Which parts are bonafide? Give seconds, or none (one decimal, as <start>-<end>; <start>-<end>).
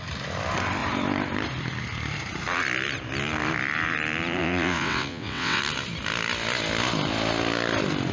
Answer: 0.0-4.4; 5.6-8.1